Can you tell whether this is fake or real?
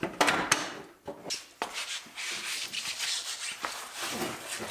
real